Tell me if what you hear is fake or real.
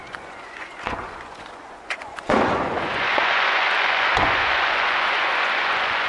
fake